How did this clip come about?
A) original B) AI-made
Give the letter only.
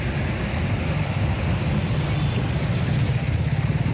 A